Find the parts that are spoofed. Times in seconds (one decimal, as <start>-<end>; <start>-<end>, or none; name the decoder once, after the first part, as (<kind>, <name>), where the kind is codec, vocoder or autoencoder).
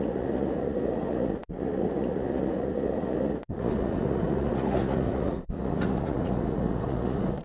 0.0-7.4 (vocoder, Vocos)